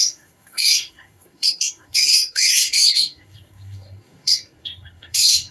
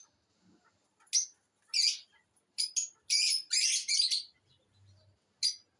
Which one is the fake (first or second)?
first